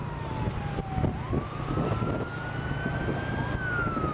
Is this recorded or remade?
recorded